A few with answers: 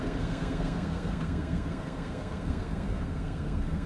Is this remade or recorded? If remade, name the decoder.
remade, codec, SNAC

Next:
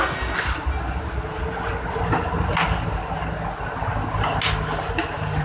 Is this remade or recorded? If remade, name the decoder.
recorded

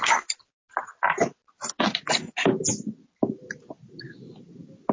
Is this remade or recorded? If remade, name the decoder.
recorded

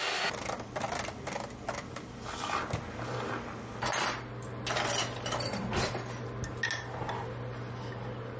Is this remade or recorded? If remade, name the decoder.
recorded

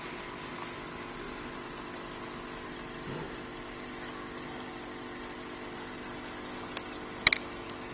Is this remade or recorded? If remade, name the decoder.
recorded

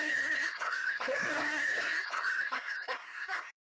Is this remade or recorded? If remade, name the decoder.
remade, codec, SNAC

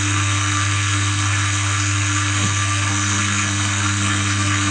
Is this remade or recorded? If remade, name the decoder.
remade, codec, SNAC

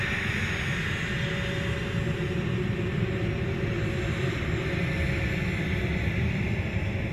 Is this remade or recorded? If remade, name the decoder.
recorded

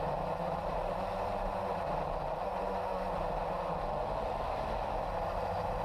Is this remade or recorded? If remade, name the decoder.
recorded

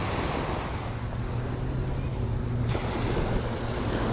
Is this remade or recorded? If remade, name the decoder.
recorded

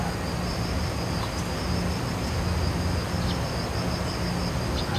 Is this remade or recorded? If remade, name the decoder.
recorded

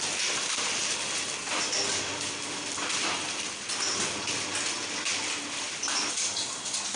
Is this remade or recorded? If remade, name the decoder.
recorded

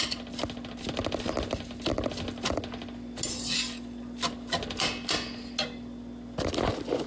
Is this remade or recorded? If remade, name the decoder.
recorded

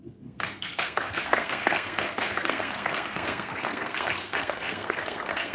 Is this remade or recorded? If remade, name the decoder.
remade, codec, SNAC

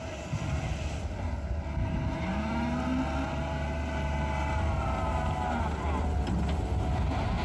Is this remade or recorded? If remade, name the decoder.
recorded